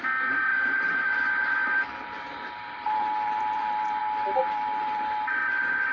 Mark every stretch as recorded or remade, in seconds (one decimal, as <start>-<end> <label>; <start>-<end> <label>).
0.0-0.5 recorded; 0.5-4.0 remade; 4.0-4.4 recorded; 4.4-5.4 remade; 5.4-5.9 recorded